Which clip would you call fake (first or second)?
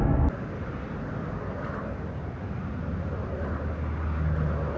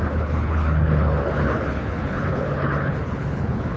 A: second